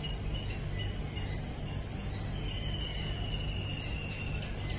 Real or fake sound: real